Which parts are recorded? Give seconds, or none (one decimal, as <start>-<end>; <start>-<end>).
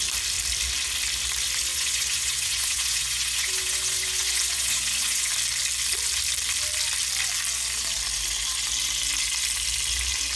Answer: 0.0-1.7; 5.3-10.4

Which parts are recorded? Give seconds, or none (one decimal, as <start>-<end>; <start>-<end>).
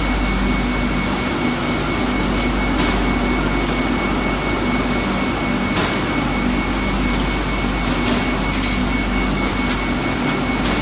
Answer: 0.0-8.8; 9.5-10.8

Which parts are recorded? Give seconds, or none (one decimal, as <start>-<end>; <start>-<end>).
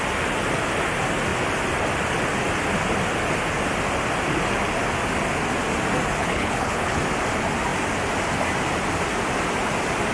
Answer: 0.0-6.2; 7.0-10.1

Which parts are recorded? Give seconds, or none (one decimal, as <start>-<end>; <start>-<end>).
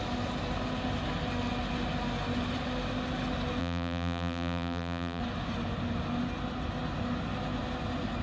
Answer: 0.0-3.6; 5.2-8.2